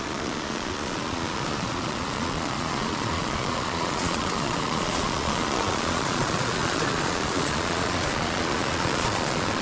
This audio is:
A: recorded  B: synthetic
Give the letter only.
B